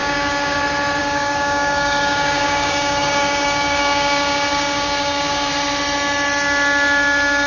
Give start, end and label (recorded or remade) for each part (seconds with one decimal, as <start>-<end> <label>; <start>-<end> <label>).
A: 0.0-0.6 remade; 0.6-1.0 recorded; 1.0-5.5 remade; 5.5-7.5 recorded